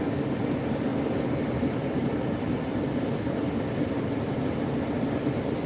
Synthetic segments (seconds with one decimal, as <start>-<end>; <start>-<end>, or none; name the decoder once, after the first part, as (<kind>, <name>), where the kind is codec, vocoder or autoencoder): none